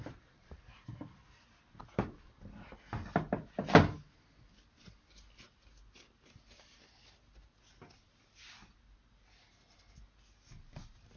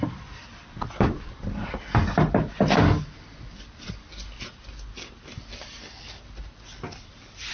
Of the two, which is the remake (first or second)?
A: second